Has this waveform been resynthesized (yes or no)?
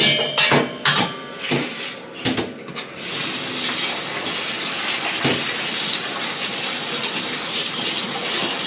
no